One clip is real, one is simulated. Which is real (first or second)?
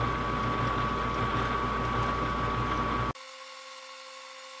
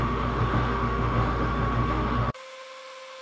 first